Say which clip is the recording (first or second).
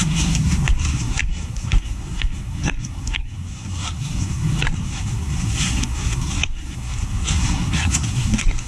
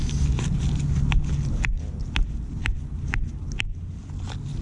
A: second